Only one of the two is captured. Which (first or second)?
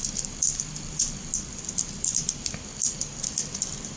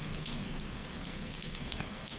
first